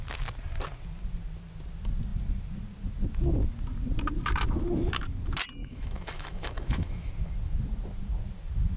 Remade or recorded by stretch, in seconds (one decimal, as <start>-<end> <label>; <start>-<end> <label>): 0.0-5.6 recorded; 5.6-7.1 remade; 7.1-8.8 recorded